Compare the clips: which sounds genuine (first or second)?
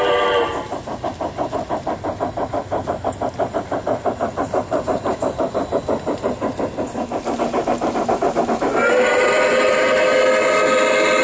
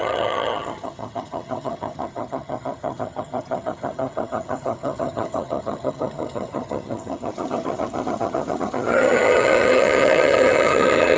first